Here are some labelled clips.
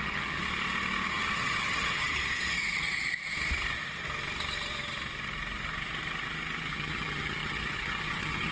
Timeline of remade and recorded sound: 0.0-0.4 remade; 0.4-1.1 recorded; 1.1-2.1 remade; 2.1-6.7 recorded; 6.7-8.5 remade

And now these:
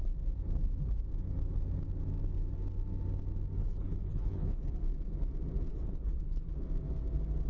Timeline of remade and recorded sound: 0.0-3.6 recorded; 3.6-4.7 remade; 4.7-5.7 recorded; 5.7-6.5 remade; 6.5-7.5 recorded

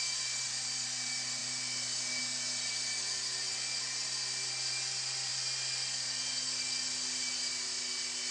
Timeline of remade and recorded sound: 0.0-8.3 recorded

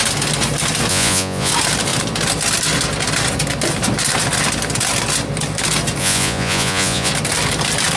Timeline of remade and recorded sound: 0.0-0.9 recorded; 0.9-1.5 remade; 1.5-6.0 recorded; 6.0-7.1 remade; 7.1-8.0 recorded

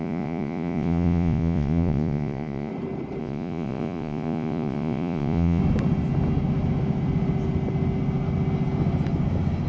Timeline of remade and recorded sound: 0.0-2.7 remade; 2.7-3.2 recorded; 3.2-5.6 remade; 5.6-9.7 recorded

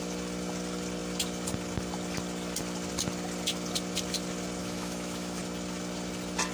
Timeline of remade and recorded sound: 0.0-4.6 recorded; 4.6-5.4 remade; 5.4-6.5 recorded

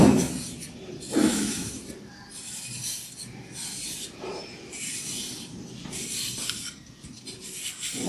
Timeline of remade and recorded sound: 0.0-1.2 recorded; 1.2-1.8 remade; 1.8-8.1 recorded

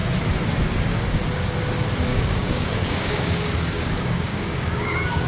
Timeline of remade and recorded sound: 0.0-2.1 recorded; 2.1-5.3 remade